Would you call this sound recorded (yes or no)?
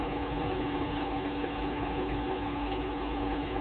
no